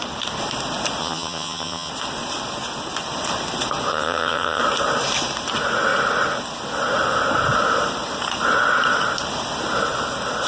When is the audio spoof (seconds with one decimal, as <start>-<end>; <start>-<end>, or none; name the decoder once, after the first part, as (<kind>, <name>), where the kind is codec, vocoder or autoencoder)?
1.0-1.9 (vocoder, HiFi-GAN); 3.9-4.6